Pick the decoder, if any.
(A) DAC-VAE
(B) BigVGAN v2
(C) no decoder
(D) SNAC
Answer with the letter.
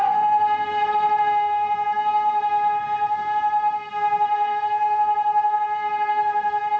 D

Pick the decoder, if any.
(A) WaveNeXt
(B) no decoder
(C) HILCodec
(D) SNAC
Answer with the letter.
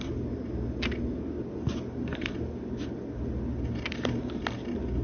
B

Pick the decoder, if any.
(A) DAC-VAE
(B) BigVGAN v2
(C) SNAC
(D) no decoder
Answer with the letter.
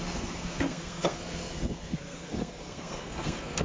C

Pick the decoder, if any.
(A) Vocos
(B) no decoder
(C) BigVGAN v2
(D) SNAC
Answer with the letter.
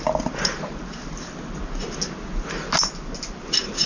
B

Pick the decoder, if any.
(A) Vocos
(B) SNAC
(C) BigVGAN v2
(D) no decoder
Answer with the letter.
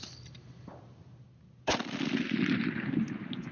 D